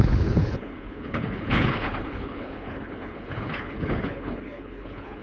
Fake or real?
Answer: fake